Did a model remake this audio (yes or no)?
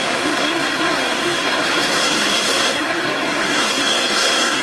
yes